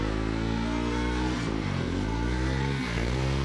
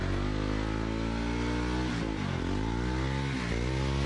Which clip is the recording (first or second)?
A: second